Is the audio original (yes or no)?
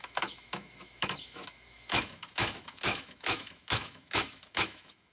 no